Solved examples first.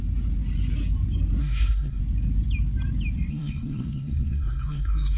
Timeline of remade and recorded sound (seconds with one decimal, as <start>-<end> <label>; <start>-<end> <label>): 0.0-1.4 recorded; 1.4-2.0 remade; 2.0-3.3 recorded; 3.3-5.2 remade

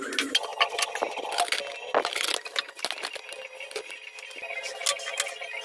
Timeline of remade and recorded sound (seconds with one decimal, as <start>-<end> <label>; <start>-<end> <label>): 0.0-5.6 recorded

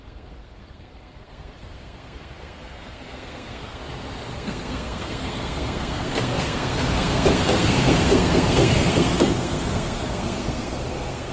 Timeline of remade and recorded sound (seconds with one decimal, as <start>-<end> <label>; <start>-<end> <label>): 0.0-3.8 remade; 3.8-4.3 recorded; 4.3-11.3 remade

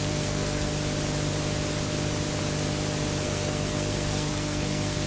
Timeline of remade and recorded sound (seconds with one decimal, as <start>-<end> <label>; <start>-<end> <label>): 0.0-0.7 remade; 0.7-3.2 recorded; 3.2-5.1 remade